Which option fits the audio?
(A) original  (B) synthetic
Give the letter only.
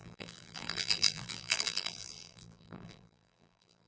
B